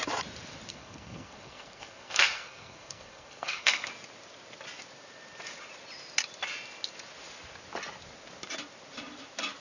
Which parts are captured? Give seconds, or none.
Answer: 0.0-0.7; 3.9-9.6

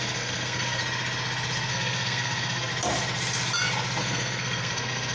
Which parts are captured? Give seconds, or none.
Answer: 0.8-1.7; 2.7-4.0